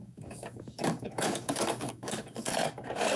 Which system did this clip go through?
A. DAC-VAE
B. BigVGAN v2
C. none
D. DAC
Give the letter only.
D